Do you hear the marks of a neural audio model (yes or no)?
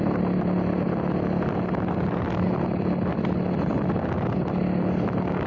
no